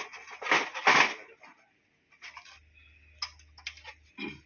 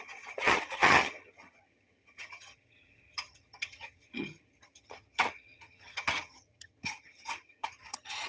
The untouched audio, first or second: first